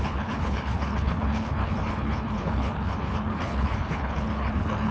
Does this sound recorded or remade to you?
remade